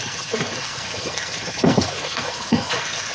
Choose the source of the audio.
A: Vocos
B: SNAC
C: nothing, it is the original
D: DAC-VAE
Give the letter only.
B